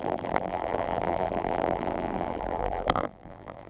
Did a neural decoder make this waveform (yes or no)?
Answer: yes